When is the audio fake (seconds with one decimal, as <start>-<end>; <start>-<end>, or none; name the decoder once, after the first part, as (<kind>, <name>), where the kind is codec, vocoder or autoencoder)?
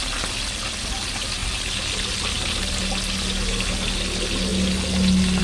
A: none